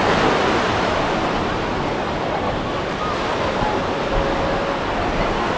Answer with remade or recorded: recorded